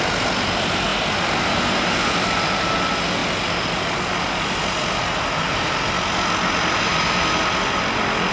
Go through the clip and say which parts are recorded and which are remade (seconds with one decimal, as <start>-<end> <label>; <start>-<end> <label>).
0.0-8.3 recorded